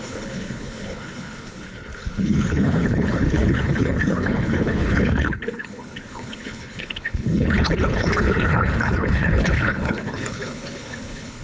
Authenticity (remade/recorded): remade